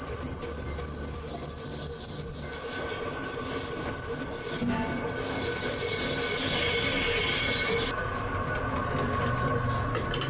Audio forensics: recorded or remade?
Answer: recorded